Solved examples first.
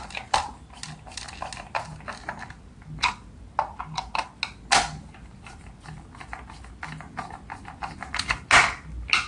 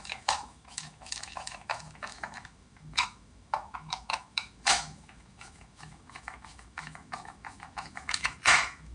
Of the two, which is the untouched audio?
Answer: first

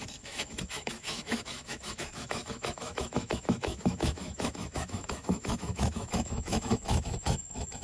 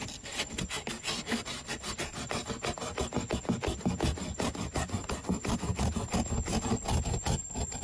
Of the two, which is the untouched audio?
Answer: second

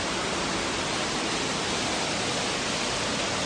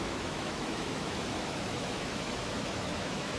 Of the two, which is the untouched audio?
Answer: first